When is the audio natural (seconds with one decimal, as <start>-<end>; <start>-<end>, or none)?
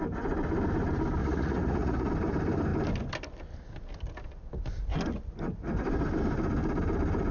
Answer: 0.0-1.2; 2.1-7.3